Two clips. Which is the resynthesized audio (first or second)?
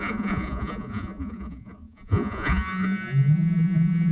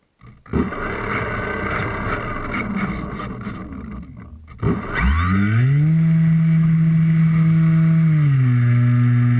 first